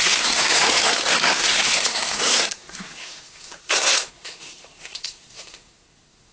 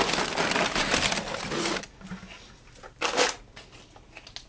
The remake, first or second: first